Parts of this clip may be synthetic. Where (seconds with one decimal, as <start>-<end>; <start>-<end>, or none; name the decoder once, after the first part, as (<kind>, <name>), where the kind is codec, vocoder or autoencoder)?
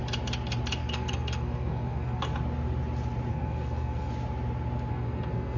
0.8-2.2 (codec, SNAC); 3.3-4.1; 4.9-5.6